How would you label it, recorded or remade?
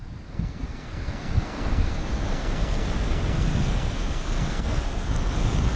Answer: remade